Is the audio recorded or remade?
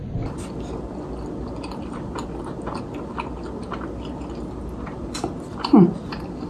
recorded